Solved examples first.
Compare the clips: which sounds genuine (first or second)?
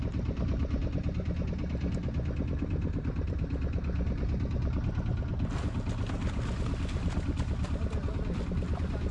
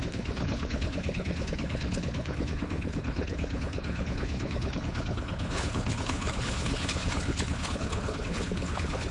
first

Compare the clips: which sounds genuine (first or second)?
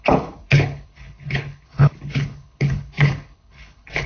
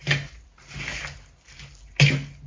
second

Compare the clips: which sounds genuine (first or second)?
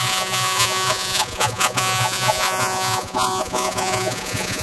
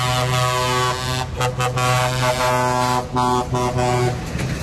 second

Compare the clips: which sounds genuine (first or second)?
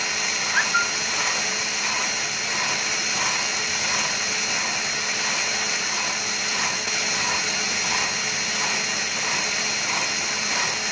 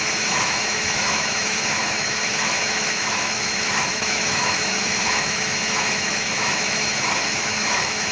first